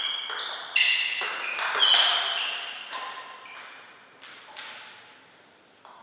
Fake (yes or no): no